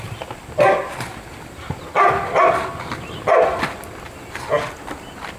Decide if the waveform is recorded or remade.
recorded